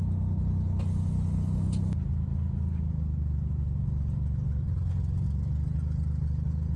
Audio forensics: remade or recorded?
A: recorded